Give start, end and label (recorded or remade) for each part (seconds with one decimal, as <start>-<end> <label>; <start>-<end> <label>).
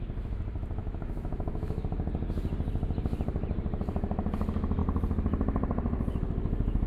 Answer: 0.0-0.8 recorded; 0.8-1.8 remade; 1.8-6.9 recorded